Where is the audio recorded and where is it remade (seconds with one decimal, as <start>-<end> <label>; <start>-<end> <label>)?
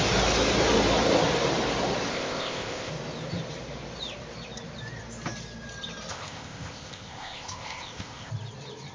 0.0-2.1 recorded; 2.1-2.9 remade; 2.9-6.1 recorded; 6.1-8.3 remade; 8.3-8.9 recorded